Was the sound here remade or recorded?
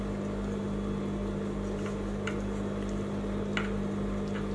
recorded